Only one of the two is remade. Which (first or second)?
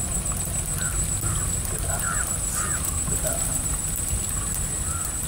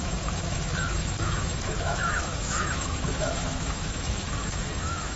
second